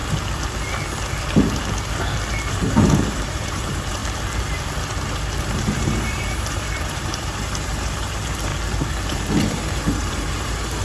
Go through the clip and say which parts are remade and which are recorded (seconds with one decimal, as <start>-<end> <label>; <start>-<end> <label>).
0.0-2.5 recorded; 2.5-4.0 remade; 4.0-5.4 recorded; 5.4-8.5 remade; 8.5-9.1 recorded; 9.1-10.8 remade